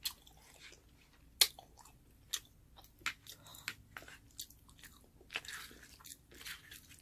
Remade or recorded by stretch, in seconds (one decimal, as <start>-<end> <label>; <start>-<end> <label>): 0.0-7.0 recorded